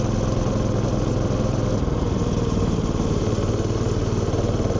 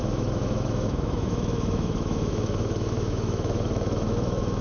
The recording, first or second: first